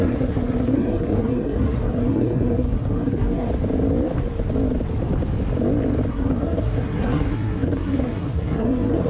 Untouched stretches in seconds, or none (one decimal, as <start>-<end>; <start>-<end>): 3.5-6.1